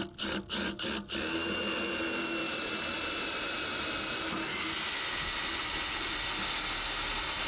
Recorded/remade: recorded